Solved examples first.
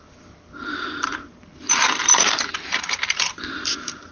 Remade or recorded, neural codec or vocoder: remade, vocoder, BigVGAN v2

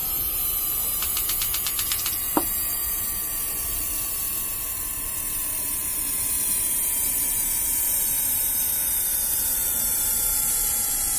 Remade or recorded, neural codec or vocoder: remade, vocoder, BigVGAN v2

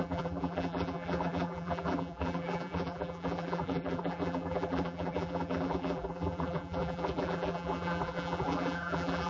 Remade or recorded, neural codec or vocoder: remade, vocoder, BigVGAN v2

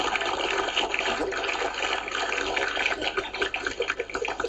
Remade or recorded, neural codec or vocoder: recorded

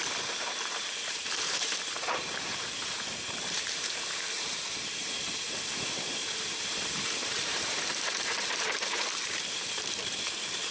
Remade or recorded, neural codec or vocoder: remade, vocoder, BigVGAN v2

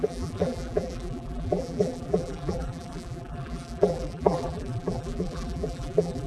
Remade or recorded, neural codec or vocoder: remade, vocoder, BigVGAN v2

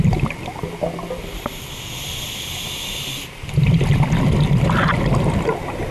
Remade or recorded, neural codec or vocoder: recorded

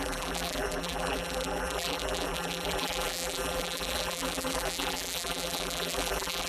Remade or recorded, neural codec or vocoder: remade, vocoder, BigVGAN v2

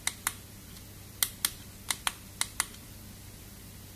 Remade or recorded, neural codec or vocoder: recorded